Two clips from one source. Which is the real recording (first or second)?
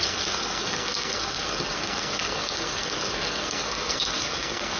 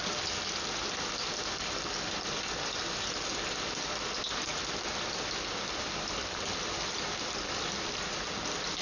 second